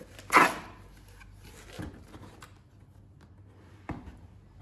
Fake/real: real